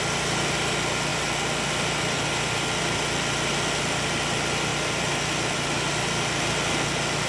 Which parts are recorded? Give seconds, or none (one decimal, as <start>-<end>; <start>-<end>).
0.0-7.3